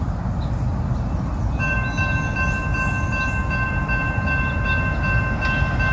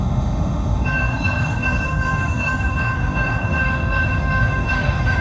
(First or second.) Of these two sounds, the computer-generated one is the second